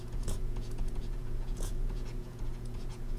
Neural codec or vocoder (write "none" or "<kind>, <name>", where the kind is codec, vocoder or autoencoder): vocoder, Vocos